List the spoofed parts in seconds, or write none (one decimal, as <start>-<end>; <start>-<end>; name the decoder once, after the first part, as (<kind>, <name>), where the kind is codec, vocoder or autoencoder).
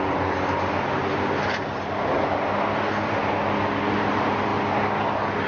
none